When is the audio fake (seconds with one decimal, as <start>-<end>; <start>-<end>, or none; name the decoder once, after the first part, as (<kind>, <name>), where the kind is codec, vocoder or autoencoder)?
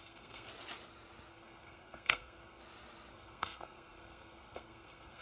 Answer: 0.0-0.5 (codec, SNAC); 1.3-2.6; 3.1-5.2